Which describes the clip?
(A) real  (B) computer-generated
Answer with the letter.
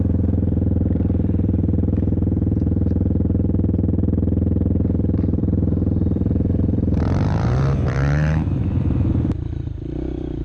B